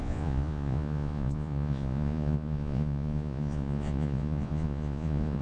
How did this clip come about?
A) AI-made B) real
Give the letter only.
A